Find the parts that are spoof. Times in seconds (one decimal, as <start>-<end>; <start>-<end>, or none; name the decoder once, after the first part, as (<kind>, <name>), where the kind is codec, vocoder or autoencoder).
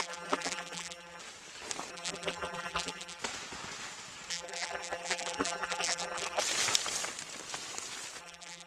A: 0.0-1.2 (vocoder, BigVGAN v2); 1.9-3.2; 4.3-6.4; 8.2-8.7